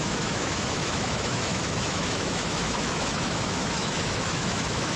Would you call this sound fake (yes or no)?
yes